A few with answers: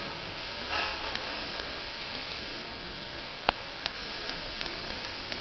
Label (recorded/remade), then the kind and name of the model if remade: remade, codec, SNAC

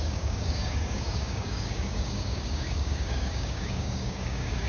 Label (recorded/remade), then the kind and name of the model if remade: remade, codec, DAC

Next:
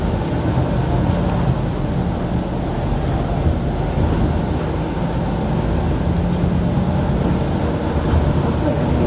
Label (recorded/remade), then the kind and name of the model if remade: recorded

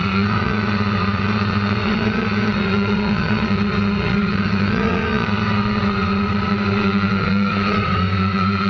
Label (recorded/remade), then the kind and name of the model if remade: remade, vocoder, WaveNeXt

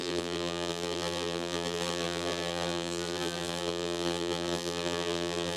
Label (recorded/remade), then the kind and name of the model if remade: remade, vocoder, BigVGAN v2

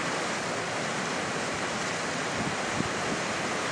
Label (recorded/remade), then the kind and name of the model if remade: recorded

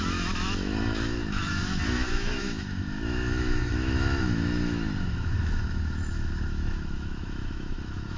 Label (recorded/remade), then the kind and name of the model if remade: remade, autoencoder, DAC-VAE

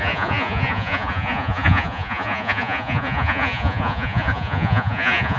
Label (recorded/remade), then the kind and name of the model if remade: remade, vocoder, Vocos